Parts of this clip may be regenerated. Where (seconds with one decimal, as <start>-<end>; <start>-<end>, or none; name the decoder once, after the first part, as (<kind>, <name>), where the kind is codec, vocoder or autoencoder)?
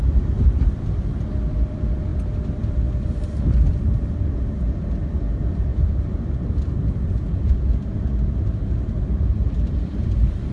0.0-2.1 (vocoder, BigVGAN v2); 2.7-10.5